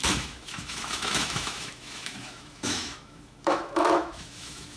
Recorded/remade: remade